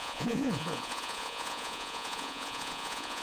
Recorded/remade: remade